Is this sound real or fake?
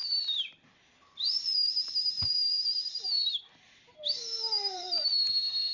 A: fake